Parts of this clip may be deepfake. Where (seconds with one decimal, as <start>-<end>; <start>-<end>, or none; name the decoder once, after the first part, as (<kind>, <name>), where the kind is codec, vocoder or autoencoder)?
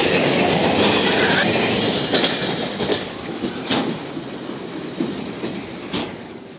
0.0-0.6 (codec, DAC); 2.9-3.5; 6.0-6.6